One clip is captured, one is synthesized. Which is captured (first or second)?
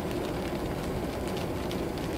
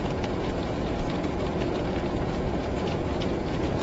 first